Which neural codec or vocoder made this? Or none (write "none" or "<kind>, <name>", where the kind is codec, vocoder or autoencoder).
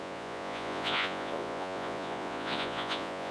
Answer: vocoder, Vocos